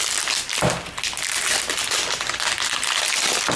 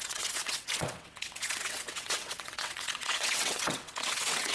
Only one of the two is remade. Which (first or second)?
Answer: second